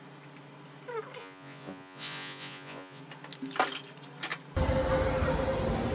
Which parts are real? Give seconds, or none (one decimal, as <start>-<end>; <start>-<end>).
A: 0.0-1.2; 3.0-5.9